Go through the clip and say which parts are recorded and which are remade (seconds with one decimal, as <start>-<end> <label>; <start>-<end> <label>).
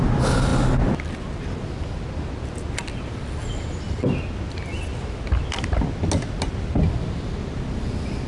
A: 0.0-8.3 recorded